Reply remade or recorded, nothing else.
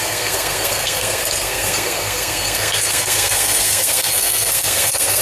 remade